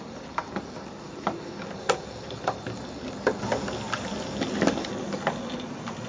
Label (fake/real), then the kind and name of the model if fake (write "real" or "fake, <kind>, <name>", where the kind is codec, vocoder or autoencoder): real